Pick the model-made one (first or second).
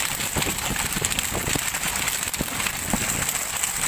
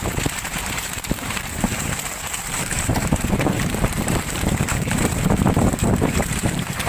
second